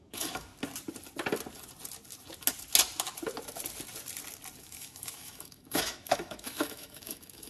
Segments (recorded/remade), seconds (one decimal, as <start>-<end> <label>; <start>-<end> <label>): 0.0-0.5 remade; 0.5-4.6 recorded; 4.6-7.5 remade

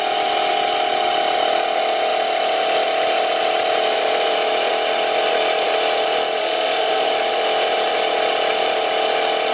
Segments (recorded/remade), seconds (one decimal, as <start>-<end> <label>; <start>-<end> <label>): 0.0-6.4 recorded; 6.4-7.1 remade; 7.1-9.5 recorded

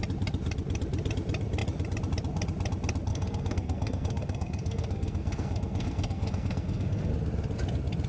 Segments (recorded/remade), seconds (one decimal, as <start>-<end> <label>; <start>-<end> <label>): 0.0-3.1 recorded; 3.1-7.1 remade; 7.1-8.1 recorded